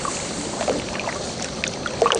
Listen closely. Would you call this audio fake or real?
real